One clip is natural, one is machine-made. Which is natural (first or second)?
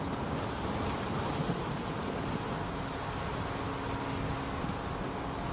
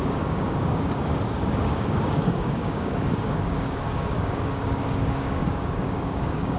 first